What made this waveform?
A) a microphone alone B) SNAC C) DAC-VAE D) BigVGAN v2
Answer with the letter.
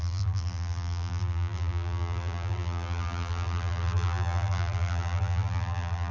D